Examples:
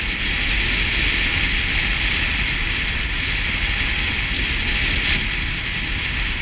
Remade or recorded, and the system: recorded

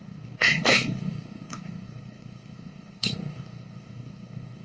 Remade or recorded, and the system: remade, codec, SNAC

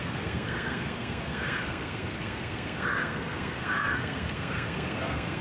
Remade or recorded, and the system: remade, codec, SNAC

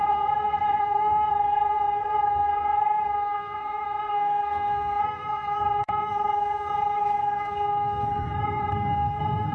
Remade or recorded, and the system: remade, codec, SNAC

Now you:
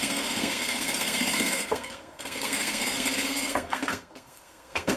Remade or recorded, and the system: remade, codec, SNAC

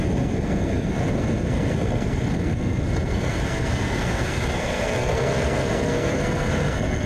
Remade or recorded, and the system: remade, codec, SNAC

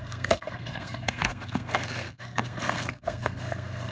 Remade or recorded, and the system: remade, codec, SNAC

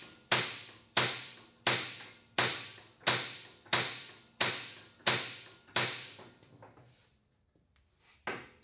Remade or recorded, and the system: recorded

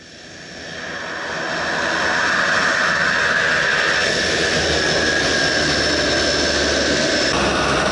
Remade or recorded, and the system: recorded